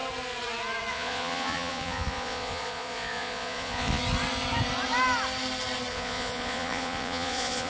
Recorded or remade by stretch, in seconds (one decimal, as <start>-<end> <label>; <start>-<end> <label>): 0.0-0.9 recorded; 0.9-4.0 remade; 4.0-5.9 recorded; 5.9-7.7 remade